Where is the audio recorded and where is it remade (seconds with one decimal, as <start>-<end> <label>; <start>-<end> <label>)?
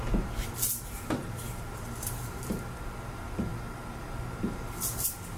0.0-0.7 recorded; 0.7-2.6 remade; 2.6-5.4 recorded